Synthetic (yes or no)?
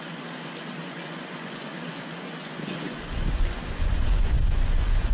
yes